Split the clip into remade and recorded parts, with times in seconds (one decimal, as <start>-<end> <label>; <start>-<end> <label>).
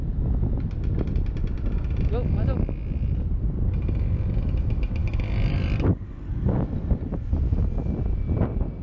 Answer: 0.0-8.8 recorded